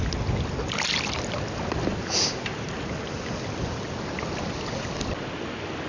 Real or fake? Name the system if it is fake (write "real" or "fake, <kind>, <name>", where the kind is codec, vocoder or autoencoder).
real